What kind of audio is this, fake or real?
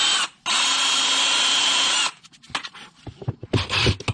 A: real